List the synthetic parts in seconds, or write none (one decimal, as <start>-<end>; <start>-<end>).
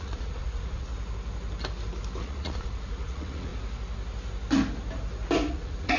0.0-0.9; 2.2-3.5; 5.5-6.0